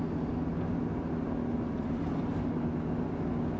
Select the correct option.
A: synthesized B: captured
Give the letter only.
B